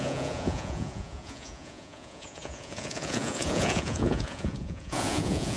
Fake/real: fake